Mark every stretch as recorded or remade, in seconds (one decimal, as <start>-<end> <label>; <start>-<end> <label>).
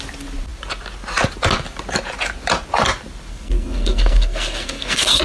0.0-3.3 recorded; 3.3-5.2 remade